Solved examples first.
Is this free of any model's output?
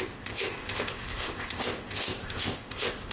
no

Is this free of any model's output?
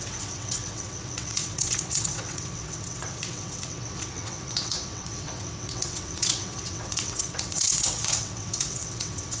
no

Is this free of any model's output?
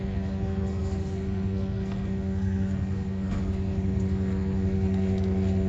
no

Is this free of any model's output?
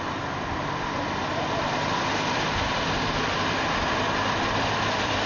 no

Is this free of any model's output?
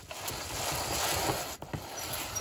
yes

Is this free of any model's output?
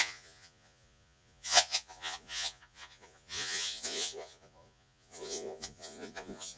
no